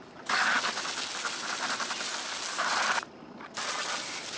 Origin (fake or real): real